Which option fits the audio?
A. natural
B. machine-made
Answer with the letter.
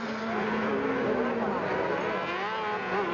A